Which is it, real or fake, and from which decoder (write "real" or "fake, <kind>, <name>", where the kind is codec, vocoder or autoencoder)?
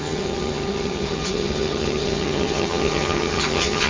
fake, vocoder, HiFi-GAN